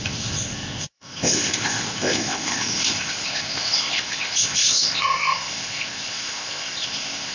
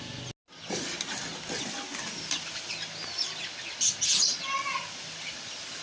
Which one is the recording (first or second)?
second